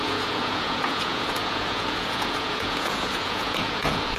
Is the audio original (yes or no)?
no